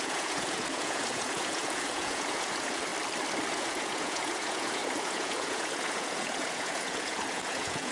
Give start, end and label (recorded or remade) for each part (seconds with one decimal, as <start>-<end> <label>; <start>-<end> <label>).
0.0-2.9 remade; 2.9-3.5 recorded; 3.5-7.9 remade